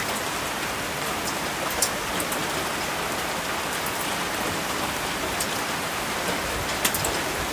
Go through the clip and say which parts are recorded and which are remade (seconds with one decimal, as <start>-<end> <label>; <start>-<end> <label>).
0.0-7.5 recorded